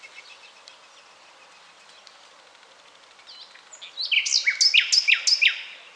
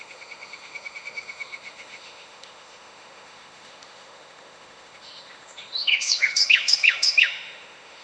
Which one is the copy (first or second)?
second